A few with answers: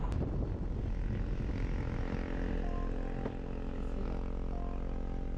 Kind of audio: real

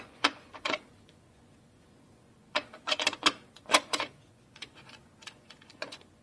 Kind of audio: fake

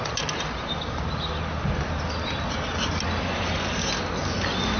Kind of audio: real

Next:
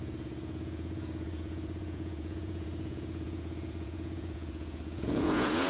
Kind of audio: fake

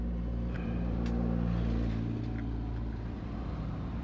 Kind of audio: real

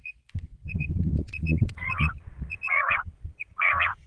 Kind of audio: fake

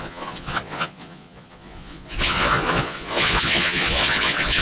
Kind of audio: fake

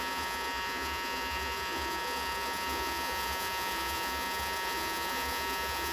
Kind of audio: fake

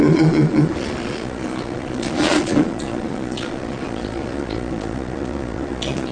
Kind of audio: fake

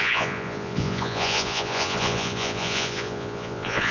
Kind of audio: fake